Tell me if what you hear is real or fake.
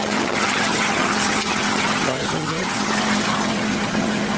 fake